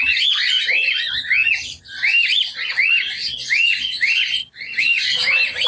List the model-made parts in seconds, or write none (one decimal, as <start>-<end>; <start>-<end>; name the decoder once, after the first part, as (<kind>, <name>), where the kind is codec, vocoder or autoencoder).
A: none